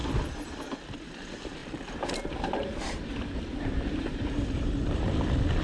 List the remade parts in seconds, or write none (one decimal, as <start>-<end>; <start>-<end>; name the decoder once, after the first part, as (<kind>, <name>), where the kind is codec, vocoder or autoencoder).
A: 1.6-5.0 (vocoder, BigVGAN v2)